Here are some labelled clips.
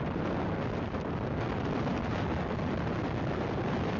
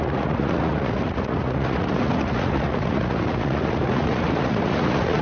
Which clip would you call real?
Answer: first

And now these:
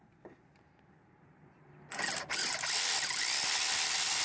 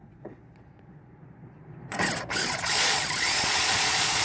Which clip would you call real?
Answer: first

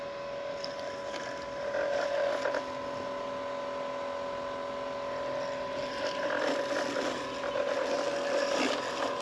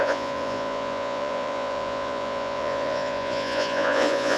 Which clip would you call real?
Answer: first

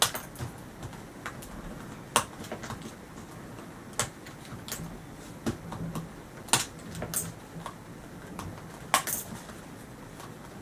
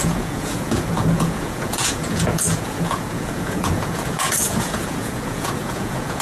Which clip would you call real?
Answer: first